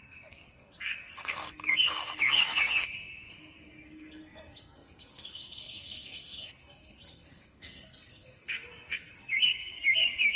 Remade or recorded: remade